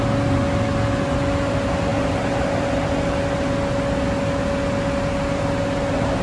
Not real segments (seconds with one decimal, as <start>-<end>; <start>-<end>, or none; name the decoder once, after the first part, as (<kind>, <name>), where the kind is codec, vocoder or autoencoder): none